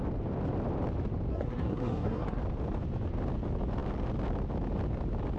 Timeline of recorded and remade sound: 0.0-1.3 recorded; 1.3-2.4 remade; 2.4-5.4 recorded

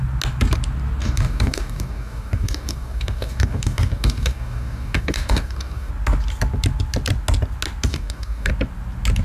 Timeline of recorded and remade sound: 0.0-1.0 recorded; 1.0-5.9 remade; 5.9-7.9 recorded; 7.9-8.5 remade; 8.5-9.2 recorded